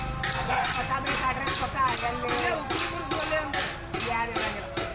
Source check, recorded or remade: recorded